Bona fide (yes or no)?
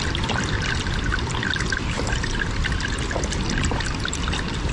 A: yes